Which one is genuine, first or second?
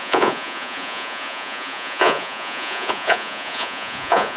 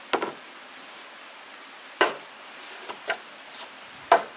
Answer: second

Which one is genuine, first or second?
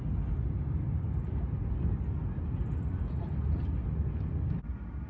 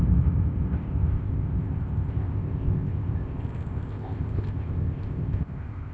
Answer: first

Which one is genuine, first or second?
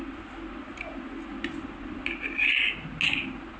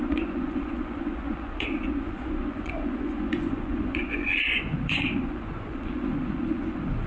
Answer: first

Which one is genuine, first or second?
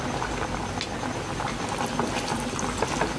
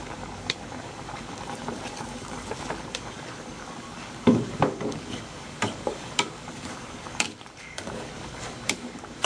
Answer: first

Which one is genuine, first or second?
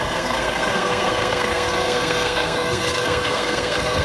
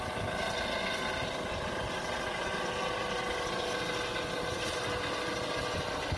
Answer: second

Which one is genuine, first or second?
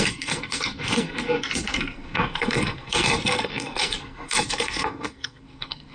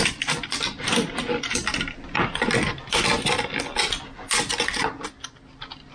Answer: second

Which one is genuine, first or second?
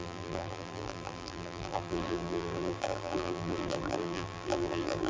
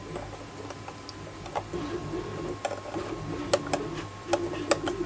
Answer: second